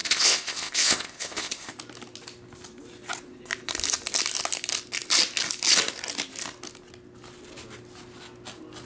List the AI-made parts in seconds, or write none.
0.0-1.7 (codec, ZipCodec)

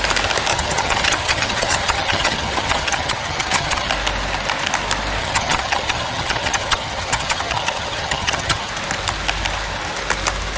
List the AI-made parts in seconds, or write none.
0.5-3.9 (vocoder, HiFi-GAN); 5.2-8.7

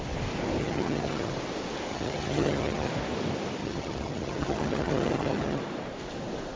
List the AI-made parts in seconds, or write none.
0.6-1.3 (vocoder, HiFi-GAN); 1.9-2.9; 3.6-5.6

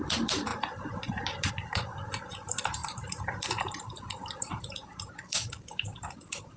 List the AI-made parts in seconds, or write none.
0.0-6.6 (vocoder, BigVGAN v2)

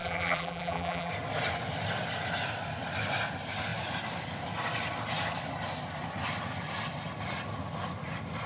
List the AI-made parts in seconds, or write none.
0.0-1.1 (vocoder, BigVGAN v2)

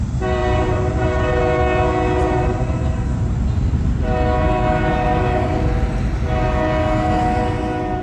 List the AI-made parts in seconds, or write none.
0.4-1.4 (vocoder, BigVGAN v2); 2.2-4.0; 4.9-5.7

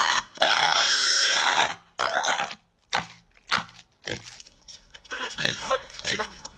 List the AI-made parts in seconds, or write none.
0.0-1.7 (codec, SNAC); 4.4-6.6